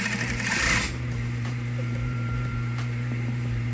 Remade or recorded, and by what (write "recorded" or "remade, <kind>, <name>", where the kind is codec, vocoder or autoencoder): remade, vocoder, BigVGAN v2